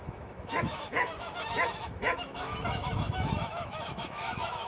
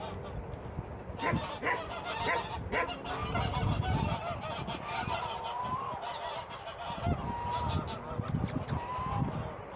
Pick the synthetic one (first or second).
first